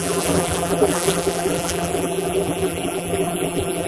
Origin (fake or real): fake